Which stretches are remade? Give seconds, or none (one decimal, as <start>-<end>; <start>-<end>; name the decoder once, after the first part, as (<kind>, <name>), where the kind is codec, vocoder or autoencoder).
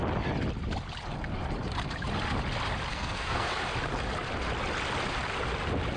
2.9-3.5 (codec, SNAC)